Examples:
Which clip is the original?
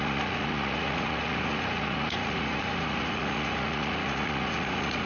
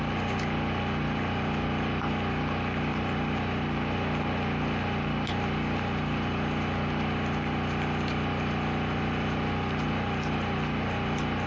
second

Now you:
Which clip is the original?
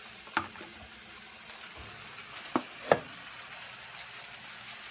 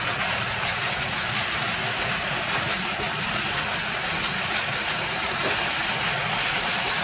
first